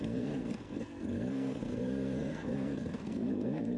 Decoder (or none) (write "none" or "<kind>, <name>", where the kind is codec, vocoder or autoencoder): codec, SNAC